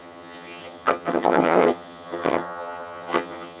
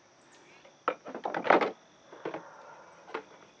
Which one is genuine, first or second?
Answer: second